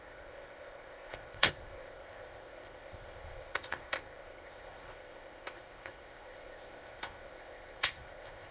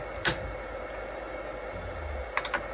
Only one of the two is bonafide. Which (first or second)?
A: second